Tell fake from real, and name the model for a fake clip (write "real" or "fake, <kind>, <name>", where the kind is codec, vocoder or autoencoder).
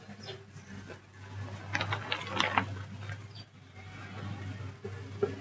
real